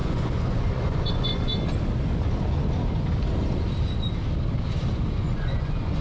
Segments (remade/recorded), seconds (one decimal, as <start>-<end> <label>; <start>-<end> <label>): 0.0-1.5 remade; 1.5-5.1 recorded; 5.1-6.0 remade